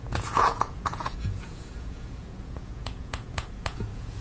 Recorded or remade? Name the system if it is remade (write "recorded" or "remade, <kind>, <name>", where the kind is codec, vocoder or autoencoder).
remade, vocoder, Vocos